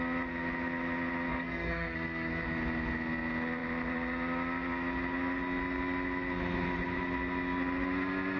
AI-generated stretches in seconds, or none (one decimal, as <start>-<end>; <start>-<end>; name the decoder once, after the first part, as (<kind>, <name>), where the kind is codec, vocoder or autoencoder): 1.3-2.3 (codec, SNAC)